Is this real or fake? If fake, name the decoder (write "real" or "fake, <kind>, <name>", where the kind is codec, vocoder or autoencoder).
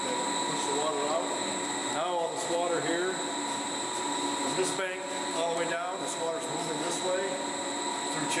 real